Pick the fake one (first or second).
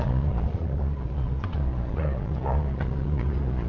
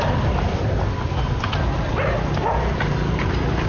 first